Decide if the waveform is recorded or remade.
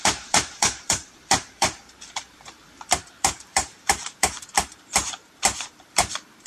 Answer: remade